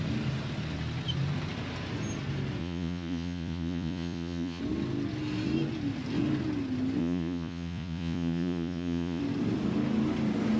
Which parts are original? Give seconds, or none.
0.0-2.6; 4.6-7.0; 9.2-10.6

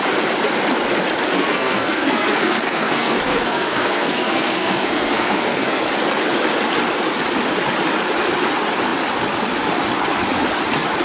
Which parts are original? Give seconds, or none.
0.0-1.3; 5.8-11.0

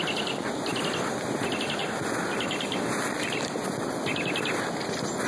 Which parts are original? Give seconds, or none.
0.0-5.3

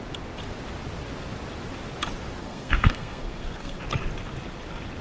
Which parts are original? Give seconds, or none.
0.0-2.4; 3.8-5.0

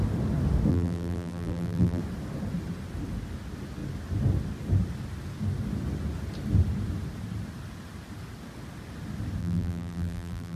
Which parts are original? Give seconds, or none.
0.0-0.7; 2.0-9.4

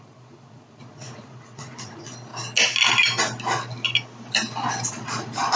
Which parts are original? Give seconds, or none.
2.3-4.9

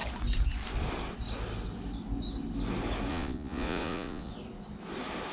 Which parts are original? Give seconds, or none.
0.0-3.1; 4.3-5.3